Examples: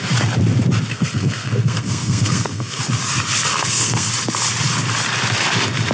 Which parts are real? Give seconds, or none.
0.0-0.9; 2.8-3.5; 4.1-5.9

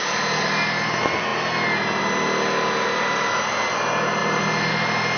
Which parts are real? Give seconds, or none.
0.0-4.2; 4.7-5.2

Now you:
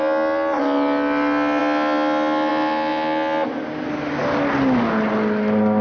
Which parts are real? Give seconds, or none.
0.0-5.8